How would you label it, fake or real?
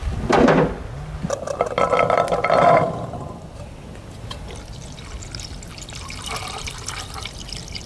real